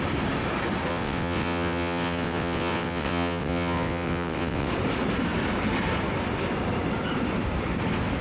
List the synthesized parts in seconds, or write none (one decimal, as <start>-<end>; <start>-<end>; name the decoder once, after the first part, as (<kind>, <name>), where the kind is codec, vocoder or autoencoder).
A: 0.9-4.7 (vocoder, WaveNeXt)

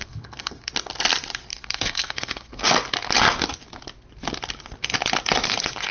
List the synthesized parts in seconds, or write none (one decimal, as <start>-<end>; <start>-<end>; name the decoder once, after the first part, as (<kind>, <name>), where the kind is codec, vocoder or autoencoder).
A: 0.0-0.7 (codec, SNAC); 1.5-2.6

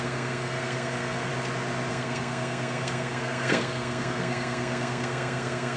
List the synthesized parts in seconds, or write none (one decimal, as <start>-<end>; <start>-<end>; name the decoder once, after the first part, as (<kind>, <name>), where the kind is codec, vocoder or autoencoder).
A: 0.0-1.3 (codec, SNAC); 1.9-5.8

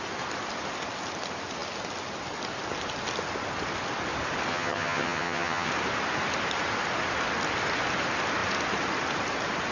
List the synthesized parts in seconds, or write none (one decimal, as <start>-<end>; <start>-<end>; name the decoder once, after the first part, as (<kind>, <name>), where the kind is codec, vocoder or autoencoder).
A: 4.5-5.7 (vocoder, HiFi-GAN)

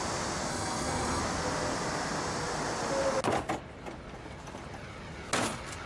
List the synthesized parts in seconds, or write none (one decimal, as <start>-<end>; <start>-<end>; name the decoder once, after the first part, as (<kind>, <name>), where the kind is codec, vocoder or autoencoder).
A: 0.5-1.2 (codec, SNAC)

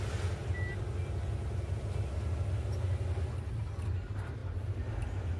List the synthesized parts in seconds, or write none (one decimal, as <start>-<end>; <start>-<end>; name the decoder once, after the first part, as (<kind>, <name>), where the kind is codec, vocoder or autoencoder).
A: none